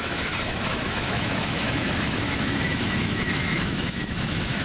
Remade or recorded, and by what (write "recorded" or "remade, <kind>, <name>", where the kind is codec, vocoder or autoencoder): remade, autoencoder, DAC-VAE